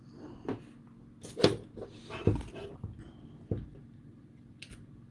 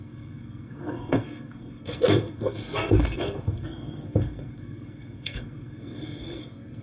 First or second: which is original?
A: first